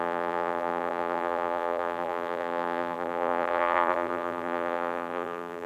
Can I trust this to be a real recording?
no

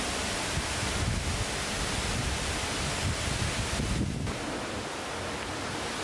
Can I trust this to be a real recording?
yes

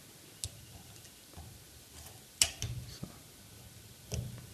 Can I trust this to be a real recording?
yes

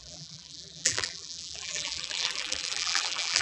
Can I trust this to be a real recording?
no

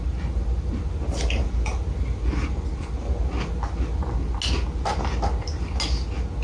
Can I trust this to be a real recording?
yes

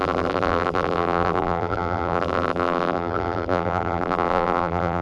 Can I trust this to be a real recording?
no